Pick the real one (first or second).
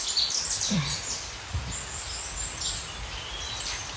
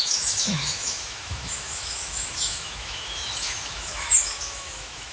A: first